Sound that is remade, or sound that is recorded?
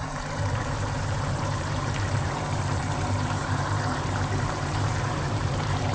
remade